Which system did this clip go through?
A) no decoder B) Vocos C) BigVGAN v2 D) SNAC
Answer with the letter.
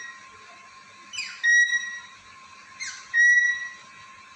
A